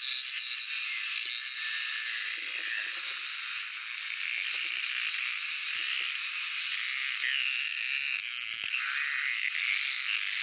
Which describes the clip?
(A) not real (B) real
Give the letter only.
B